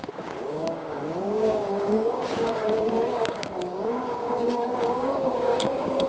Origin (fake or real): fake